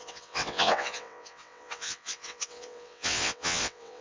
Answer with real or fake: fake